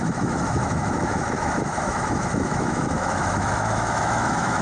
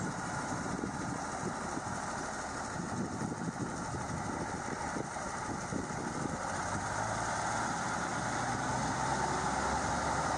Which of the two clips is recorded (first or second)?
second